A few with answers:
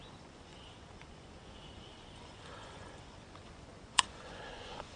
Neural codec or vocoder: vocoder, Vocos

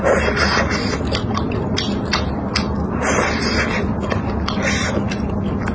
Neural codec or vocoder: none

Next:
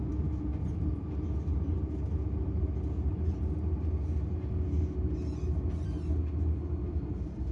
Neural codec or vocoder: none